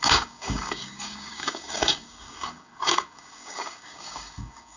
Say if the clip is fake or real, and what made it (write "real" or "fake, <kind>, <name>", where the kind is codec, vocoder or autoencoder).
fake, codec, DAC